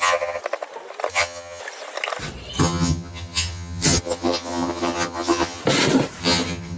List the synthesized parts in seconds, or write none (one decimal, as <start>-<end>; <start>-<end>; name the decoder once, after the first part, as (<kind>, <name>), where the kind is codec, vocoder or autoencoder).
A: 0.0-0.4 (vocoder, HiFi-GAN); 1.1-1.6; 2.6-5.6; 6.2-6.8